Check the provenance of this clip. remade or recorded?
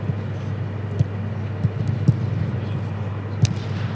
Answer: recorded